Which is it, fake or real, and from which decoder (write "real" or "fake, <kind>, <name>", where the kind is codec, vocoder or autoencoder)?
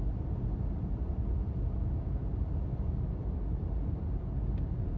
real